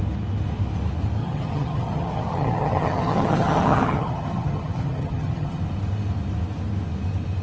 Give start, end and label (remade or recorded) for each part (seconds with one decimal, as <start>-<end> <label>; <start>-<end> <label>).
0.0-1.2 recorded; 1.2-5.6 remade; 5.6-7.4 recorded